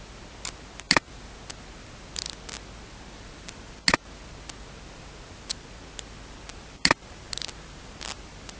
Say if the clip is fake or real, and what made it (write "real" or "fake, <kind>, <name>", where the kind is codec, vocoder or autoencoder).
real